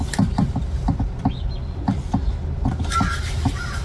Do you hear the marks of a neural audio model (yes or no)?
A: no